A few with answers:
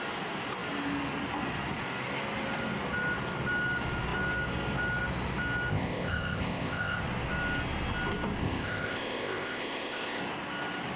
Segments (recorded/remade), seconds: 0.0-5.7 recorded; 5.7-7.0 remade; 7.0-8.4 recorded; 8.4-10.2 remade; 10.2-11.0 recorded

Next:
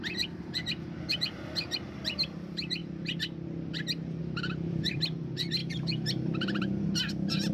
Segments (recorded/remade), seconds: 0.0-2.8 remade; 2.8-4.2 recorded; 4.2-7.5 remade

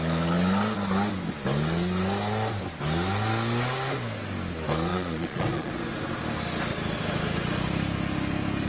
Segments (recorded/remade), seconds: 0.0-4.9 recorded; 4.9-5.7 remade; 5.7-8.7 recorded

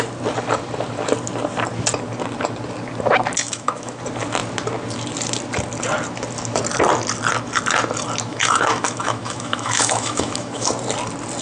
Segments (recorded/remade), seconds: 0.0-3.4 recorded; 3.4-4.0 remade; 4.0-8.3 recorded; 8.3-10.7 remade; 10.7-11.4 recorded

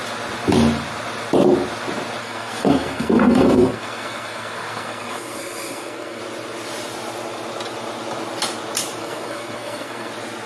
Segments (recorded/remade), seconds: 0.0-2.2 recorded; 2.2-6.2 remade; 6.2-9.0 recorded; 9.0-10.1 remade; 10.1-10.5 recorded

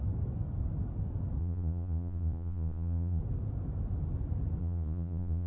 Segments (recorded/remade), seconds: 0.0-1.4 recorded; 1.4-3.2 remade; 3.2-4.6 recorded; 4.6-5.5 remade

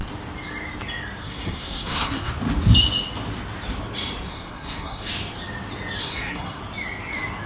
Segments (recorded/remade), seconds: 0.0-1.2 recorded; 1.2-2.3 remade; 2.3-4.3 recorded; 4.3-5.1 remade; 5.1-6.0 recorded; 6.0-6.6 remade; 6.6-7.5 recorded